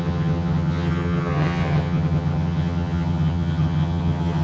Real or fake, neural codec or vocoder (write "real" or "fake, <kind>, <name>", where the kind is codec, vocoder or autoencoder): fake, vocoder, HiFi-GAN